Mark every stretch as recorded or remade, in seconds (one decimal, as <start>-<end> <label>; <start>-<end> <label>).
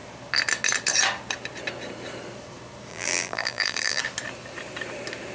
0.0-2.9 recorded; 2.9-4.0 remade; 4.0-5.3 recorded